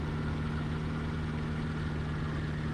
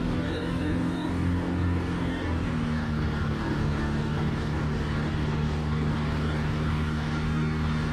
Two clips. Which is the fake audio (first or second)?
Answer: second